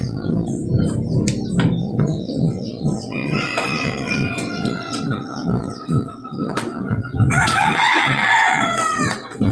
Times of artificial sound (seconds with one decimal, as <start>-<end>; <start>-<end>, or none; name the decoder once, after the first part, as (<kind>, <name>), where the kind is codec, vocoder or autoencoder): 0.0-0.6 (vocoder, WaveNeXt); 1.8-9.5